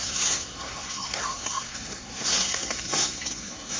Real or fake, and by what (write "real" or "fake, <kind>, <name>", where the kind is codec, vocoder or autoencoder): fake, codec, SNAC